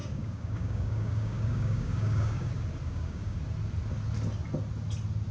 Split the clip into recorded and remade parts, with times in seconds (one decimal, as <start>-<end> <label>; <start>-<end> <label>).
0.0-2.5 remade; 2.5-2.9 recorded; 2.9-3.4 remade; 3.4-5.3 recorded